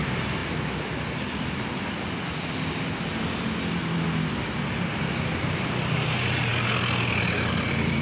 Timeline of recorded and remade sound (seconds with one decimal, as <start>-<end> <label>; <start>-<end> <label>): 0.0-8.0 recorded